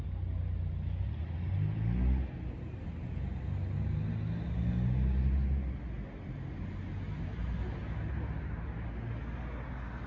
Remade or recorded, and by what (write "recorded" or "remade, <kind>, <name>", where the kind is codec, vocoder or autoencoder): recorded